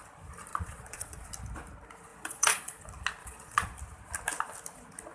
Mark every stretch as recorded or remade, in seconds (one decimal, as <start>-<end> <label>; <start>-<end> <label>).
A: 0.0-0.5 recorded; 0.5-1.3 remade; 1.3-2.1 recorded; 2.1-2.8 remade; 2.8-3.2 recorded; 3.2-3.8 remade; 3.8-5.1 recorded